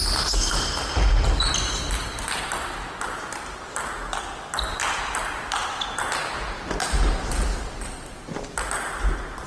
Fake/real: real